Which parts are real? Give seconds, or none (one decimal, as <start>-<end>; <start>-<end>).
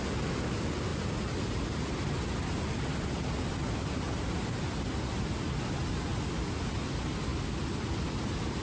0.0-8.6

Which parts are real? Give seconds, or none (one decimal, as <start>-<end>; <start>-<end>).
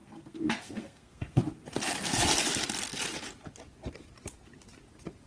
1.4-5.3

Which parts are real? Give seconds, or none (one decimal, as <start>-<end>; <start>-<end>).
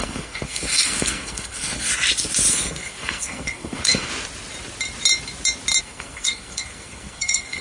1.9-2.5; 4.1-5.8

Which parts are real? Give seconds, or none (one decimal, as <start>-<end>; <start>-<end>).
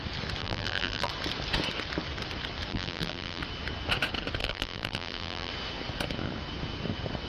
0.0-0.4; 1.1-2.7; 3.4-4.4; 5.5-7.3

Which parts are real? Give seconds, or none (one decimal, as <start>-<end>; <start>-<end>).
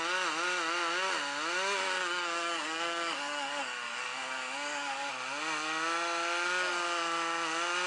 0.0-2.0; 5.1-7.9